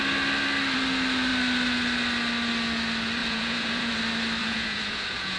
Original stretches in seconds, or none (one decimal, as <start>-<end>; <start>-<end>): 0.0-3.2; 3.9-4.4